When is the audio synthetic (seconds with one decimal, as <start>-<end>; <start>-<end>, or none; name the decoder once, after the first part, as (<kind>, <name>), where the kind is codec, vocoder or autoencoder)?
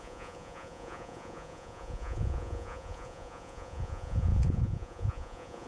0.0-5.7 (vocoder, Vocos)